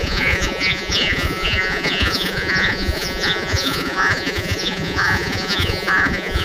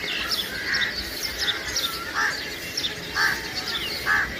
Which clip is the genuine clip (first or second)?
second